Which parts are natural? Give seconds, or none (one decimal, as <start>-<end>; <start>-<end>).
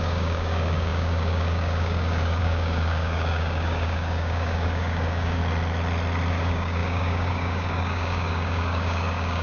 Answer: 5.4-6.3